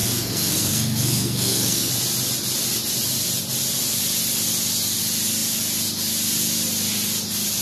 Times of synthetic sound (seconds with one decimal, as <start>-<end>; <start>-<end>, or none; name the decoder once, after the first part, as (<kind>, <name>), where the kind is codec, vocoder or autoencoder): 0.0-1.9 (codec, SNAC)